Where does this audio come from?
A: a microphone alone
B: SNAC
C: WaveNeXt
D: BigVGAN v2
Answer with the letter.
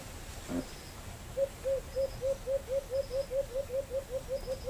A